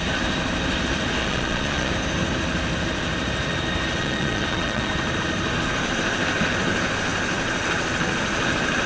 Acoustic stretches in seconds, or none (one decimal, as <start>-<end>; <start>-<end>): 0.0-1.2; 1.9-4.0; 4.9-8.9